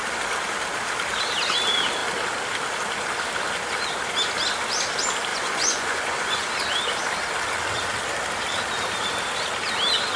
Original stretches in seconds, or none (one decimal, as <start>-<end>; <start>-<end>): 0.0-5.3; 6.5-10.2

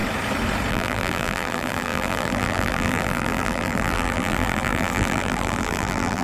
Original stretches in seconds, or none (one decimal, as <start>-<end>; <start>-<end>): 0.0-0.7

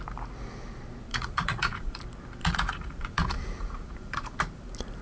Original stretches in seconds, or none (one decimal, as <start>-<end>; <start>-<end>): 0.0-1.1; 2.0-2.4; 4.4-5.0

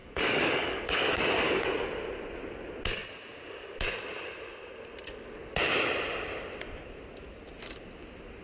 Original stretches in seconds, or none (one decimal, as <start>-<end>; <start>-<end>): 1.6-8.4

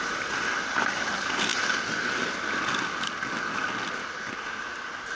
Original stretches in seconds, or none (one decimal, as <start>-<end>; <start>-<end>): 0.0-5.1

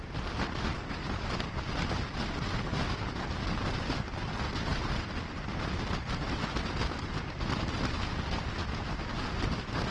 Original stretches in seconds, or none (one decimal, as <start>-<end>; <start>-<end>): 0.0-9.9

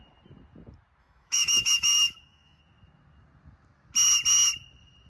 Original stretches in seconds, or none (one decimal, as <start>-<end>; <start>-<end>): 0.0-1.0; 2.6-5.1